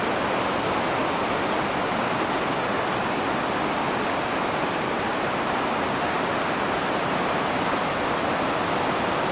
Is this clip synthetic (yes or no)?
no